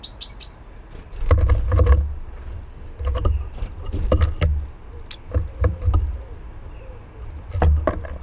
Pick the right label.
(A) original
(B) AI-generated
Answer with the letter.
A